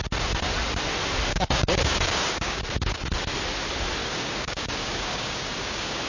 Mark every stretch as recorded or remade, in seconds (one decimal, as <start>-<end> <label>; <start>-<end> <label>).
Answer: 0.0-1.3 recorded; 1.3-2.6 remade; 2.6-4.0 recorded; 4.0-6.1 remade